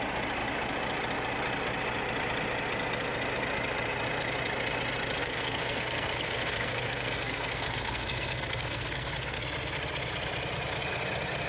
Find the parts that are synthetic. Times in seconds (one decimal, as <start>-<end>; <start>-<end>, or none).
5.2-9.4